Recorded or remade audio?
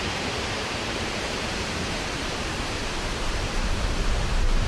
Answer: remade